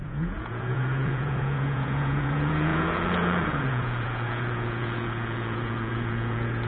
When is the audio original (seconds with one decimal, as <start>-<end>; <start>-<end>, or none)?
none